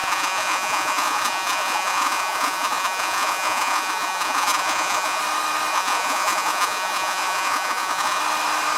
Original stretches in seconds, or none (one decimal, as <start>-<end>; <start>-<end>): 5.2-5.7; 8.2-8.8